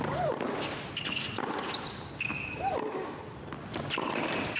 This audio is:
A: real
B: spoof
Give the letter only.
A